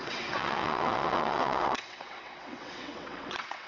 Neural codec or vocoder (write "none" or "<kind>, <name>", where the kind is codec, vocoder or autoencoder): vocoder, WaveNeXt